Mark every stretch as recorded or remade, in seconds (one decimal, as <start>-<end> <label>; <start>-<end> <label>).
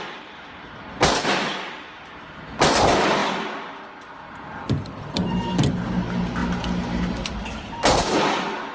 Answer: 0.0-8.7 recorded